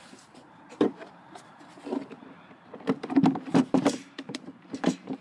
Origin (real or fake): fake